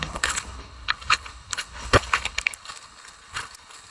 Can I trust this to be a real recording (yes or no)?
no